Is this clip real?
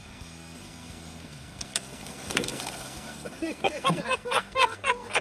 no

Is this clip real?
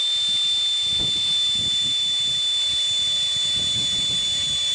yes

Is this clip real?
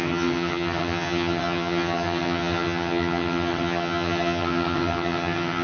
no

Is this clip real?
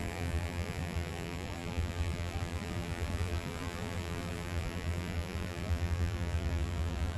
no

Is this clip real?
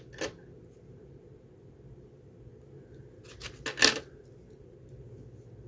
yes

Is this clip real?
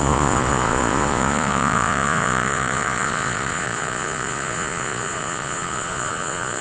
no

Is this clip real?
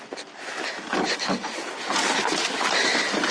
yes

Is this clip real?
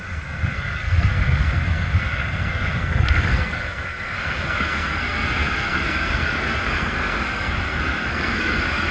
no